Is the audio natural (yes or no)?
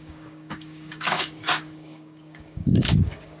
no